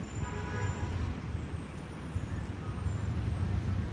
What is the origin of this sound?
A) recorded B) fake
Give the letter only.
A